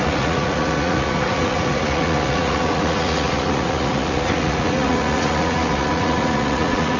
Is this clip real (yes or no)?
no